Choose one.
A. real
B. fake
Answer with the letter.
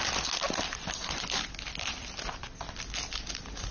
A